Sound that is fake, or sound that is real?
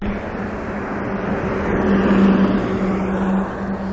real